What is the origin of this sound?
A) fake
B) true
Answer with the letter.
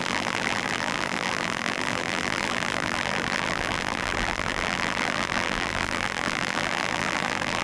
A